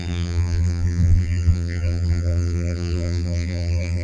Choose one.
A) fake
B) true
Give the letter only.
A